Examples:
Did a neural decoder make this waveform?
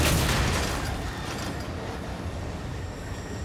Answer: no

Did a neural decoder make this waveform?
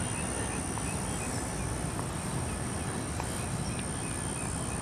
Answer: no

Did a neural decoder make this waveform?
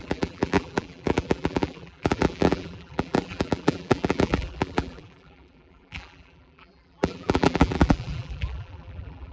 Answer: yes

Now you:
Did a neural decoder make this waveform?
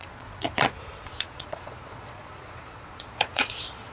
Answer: yes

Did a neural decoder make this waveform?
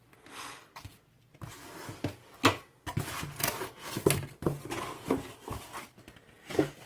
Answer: no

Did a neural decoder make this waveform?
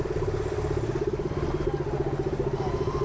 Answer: no